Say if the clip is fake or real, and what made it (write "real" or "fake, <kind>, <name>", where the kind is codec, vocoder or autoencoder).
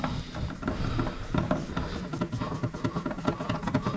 real